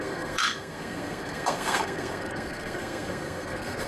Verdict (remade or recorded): remade